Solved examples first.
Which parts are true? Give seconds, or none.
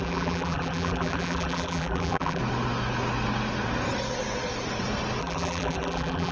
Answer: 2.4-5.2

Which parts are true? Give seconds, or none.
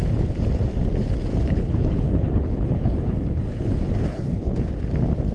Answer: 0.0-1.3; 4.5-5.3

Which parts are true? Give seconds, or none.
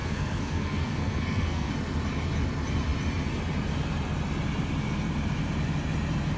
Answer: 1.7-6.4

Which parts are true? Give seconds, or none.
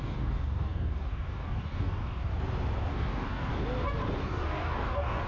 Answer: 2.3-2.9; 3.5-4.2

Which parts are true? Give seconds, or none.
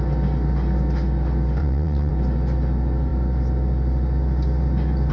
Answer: 0.0-1.6; 2.1-5.1